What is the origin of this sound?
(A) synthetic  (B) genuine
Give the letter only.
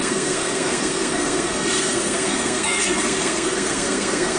A